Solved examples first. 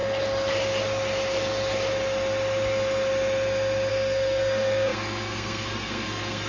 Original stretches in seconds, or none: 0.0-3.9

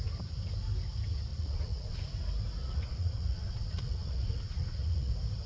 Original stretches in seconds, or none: 0.0-1.3; 2.0-2.6; 5.1-5.5

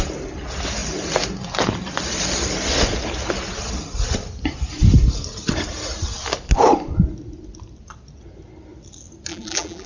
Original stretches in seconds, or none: 0.0-9.3

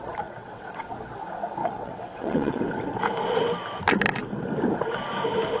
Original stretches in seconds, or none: 0.0-0.4; 0.9-1.6; 2.6-5.6

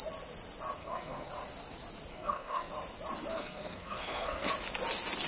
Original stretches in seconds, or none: 0.0-0.8; 1.3-2.1; 2.7-3.3; 4.5-5.3

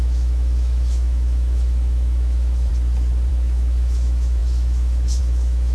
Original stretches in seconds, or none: 2.7-3.3

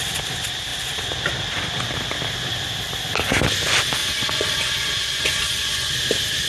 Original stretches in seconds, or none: 0.0-4.0; 5.9-6.5

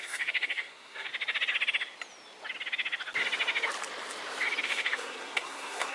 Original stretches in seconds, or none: 1.1-4.6